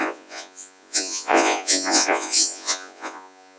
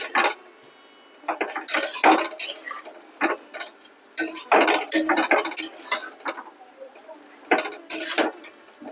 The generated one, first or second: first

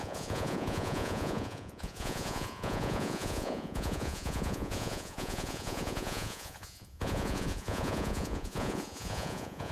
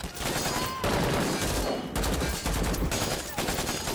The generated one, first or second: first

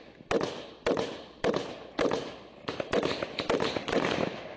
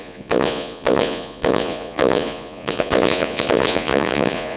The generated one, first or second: second